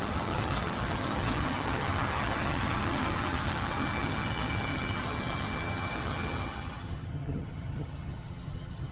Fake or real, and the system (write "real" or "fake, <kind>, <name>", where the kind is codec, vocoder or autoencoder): fake, vocoder, HiFi-GAN